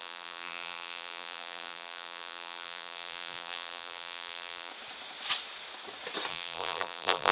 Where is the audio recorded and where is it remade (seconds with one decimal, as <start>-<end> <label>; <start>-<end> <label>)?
0.0-4.7 remade; 4.7-6.3 recorded; 6.3-7.3 remade